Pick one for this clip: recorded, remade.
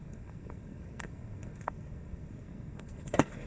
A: remade